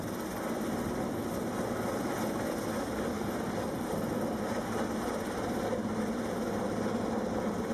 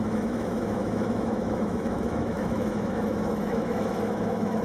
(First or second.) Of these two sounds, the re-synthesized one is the second